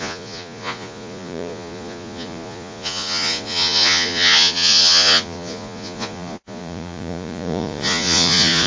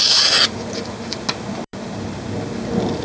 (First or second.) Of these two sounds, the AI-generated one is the first